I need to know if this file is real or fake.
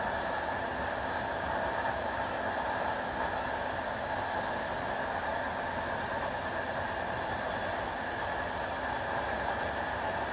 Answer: real